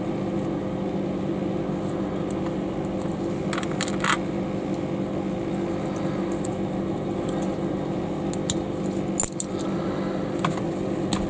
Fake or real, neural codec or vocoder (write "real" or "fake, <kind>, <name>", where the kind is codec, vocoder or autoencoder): real